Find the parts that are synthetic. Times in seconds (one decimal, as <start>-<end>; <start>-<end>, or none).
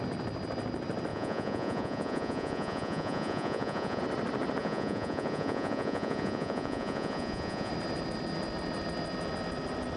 1.1-4.0; 4.6-7.7